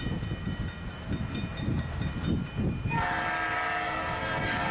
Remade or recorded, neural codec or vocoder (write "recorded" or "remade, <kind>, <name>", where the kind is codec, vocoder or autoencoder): remade, vocoder, BigVGAN v2